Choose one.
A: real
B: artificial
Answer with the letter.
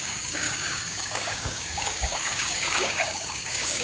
B